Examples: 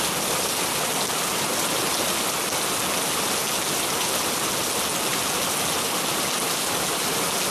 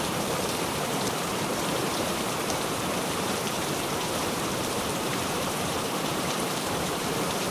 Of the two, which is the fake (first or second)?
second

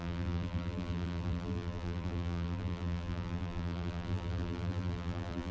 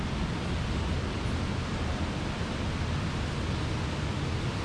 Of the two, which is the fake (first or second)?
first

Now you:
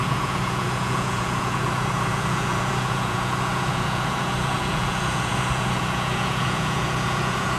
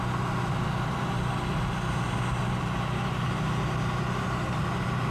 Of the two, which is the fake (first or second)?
first